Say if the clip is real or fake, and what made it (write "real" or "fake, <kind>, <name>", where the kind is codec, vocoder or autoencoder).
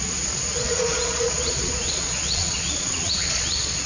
fake, vocoder, Vocos